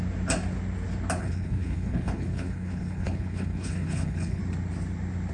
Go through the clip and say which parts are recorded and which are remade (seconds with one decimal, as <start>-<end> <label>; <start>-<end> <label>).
0.0-1.2 recorded; 1.2-4.4 remade; 4.4-5.3 recorded